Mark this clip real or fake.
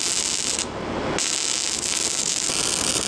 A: real